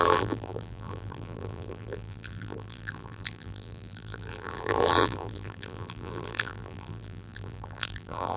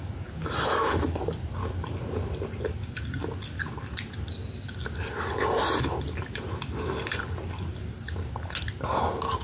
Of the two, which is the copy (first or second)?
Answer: first